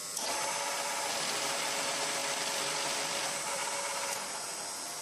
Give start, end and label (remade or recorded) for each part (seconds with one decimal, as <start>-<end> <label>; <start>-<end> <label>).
0.0-5.0 remade